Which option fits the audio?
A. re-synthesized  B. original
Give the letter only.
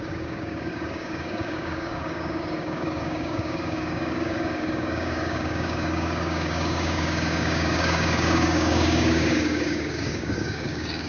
A